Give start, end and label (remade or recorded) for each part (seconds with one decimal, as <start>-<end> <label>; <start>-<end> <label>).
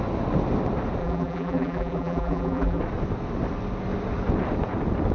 0.0-1.0 recorded; 1.0-2.8 remade; 2.8-5.1 recorded